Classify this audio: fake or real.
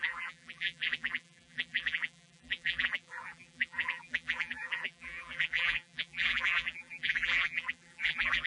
fake